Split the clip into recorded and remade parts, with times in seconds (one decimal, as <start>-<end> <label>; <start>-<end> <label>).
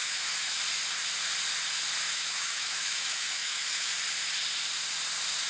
0.0-0.6 remade; 0.6-2.1 recorded; 2.1-3.9 remade; 3.9-5.5 recorded